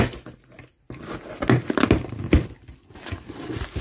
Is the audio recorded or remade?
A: recorded